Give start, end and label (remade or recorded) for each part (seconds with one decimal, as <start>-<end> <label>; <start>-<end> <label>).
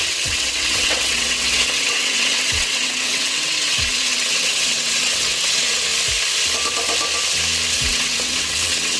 0.0-5.9 remade; 5.9-7.7 recorded; 7.7-9.0 remade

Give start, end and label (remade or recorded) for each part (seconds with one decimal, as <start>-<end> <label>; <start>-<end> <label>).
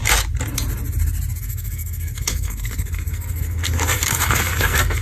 0.0-1.4 recorded; 1.4-5.0 remade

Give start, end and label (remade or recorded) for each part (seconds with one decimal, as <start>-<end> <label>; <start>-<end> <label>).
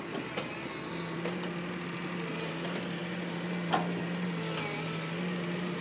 0.0-5.8 recorded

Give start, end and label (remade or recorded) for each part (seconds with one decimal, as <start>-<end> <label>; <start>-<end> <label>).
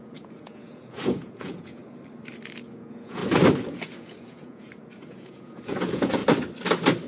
0.0-1.8 remade; 1.8-2.6 recorded; 2.6-3.2 remade; 3.2-3.7 recorded; 3.7-6.2 remade; 6.2-7.1 recorded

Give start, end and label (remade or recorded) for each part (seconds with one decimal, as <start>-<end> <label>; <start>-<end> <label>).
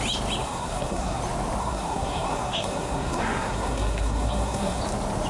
0.0-0.4 recorded; 0.4-1.2 remade; 1.2-1.6 recorded; 1.6-4.8 remade; 4.8-5.3 recorded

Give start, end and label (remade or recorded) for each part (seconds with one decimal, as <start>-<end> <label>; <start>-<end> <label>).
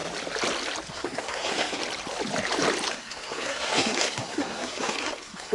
0.0-0.9 recorded; 0.9-1.8 remade; 1.8-2.9 recorded; 2.9-5.5 remade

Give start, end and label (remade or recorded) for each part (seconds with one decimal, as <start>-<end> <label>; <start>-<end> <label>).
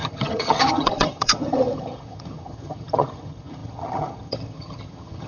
0.0-5.3 remade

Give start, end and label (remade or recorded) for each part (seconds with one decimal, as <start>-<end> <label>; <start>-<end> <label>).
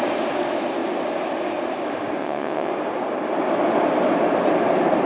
0.0-2.2 recorded; 2.2-2.7 remade; 2.7-5.1 recorded